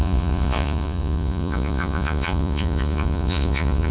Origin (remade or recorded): remade